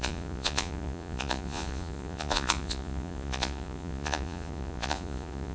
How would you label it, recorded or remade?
remade